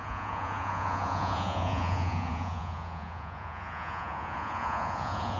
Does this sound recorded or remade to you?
remade